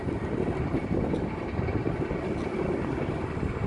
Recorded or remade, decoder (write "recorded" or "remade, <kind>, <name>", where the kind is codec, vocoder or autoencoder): recorded